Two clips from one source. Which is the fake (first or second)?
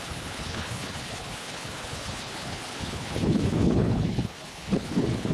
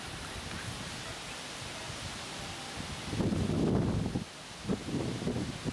first